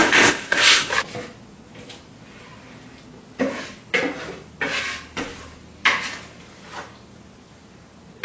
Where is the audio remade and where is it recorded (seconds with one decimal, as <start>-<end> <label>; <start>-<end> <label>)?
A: 0.0-0.9 remade; 0.9-8.2 recorded